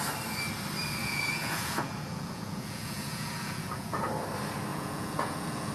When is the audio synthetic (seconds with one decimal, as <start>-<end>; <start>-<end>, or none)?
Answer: 1.0-4.0; 4.7-5.7